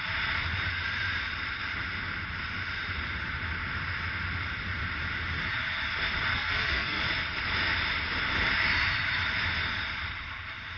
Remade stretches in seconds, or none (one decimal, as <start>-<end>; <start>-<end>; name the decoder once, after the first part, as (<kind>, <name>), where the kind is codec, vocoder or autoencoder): 6.3-7.0 (codec, SNAC)